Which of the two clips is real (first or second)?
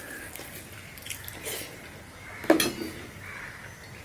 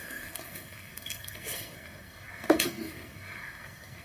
first